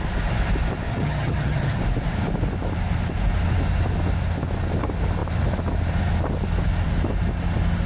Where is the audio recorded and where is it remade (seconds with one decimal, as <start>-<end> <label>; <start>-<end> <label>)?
0.0-0.9 recorded; 0.9-1.8 remade; 1.8-7.9 recorded